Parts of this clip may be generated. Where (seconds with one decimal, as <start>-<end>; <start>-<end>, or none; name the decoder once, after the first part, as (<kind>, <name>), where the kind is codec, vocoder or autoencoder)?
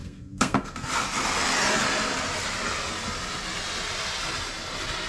0.0-0.9 (codec, SNAC)